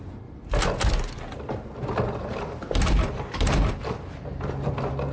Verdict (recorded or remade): recorded